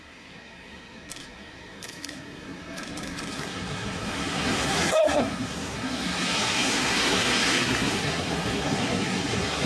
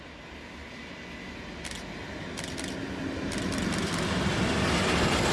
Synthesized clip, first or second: first